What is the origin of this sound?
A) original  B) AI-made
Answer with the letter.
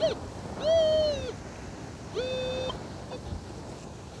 A